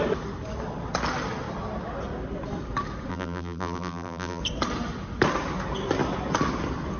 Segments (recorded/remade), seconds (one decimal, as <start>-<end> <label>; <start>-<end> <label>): 0.0-3.1 recorded; 3.1-4.4 remade; 4.4-7.0 recorded